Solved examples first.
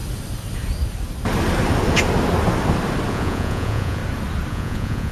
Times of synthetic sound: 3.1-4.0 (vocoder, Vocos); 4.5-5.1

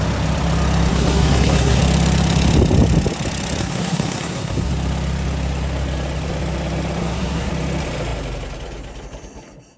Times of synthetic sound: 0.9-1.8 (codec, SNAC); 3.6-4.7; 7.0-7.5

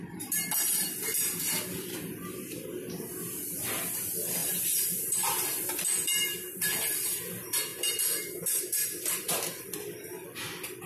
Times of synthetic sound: 0.0-2.7 (vocoder, BigVGAN v2); 3.8-10.9

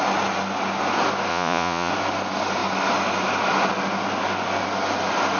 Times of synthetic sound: 1.3-1.9 (vocoder, Vocos)